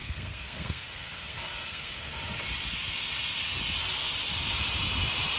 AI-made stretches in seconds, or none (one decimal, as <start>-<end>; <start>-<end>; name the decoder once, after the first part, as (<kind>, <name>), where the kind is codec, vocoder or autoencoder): 0.0-2.1 (codec, SNAC)